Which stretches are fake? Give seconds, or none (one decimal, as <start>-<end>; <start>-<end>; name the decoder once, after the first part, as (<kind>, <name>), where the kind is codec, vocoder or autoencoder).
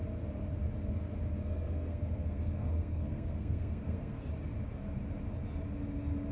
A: 1.4-4.3 (codec, SNAC)